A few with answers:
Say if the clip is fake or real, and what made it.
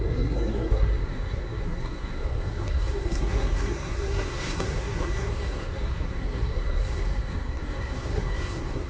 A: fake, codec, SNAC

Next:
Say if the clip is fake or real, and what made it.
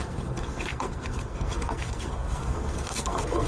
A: fake, codec, SNAC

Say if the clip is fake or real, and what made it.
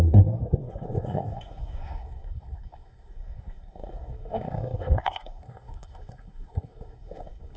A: fake, codec, SNAC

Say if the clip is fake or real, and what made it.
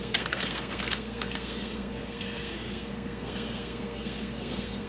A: fake, codec, SNAC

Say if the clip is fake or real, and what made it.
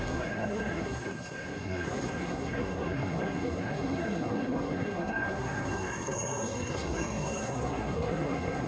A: fake, codec, SNAC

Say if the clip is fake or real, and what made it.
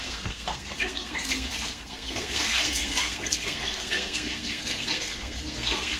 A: fake, codec, SNAC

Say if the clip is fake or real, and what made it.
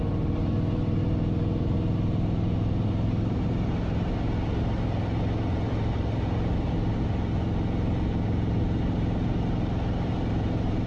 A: real